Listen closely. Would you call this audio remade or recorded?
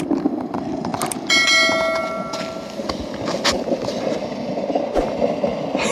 recorded